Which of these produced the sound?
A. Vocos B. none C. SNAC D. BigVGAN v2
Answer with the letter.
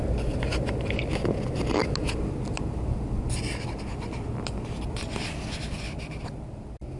B